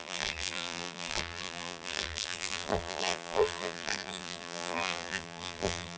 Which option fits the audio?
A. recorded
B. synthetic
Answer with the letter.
B